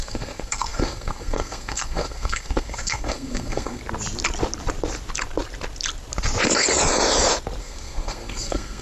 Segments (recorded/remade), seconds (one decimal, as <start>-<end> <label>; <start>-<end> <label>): 0.0-3.8 remade; 3.8-7.6 recorded; 7.6-8.8 remade